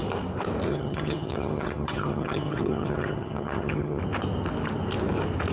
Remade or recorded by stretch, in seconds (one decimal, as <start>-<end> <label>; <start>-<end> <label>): 0.0-0.7 recorded; 0.7-4.0 remade; 4.0-5.5 recorded